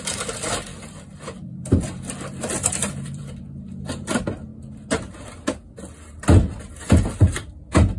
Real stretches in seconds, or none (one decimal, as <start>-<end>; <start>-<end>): 0.0-0.7; 3.6-8.0